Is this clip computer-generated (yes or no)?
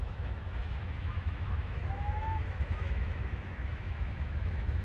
yes